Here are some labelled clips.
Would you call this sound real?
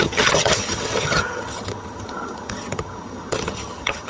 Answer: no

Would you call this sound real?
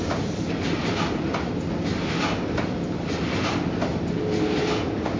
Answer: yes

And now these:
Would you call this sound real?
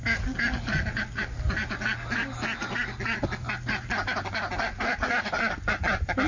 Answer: yes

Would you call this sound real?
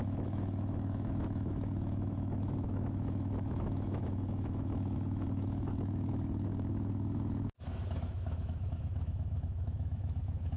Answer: no